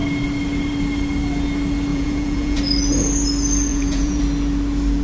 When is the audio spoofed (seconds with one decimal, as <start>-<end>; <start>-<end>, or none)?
1.9-2.6; 3.7-4.2